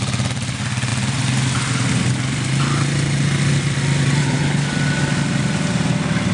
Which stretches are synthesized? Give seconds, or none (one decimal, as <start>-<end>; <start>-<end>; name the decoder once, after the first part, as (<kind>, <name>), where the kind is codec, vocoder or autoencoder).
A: 4.2-4.7 (codec, HILCodec)